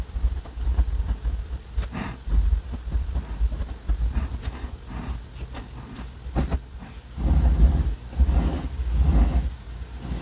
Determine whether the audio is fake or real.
real